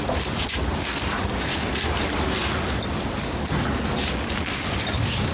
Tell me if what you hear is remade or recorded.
recorded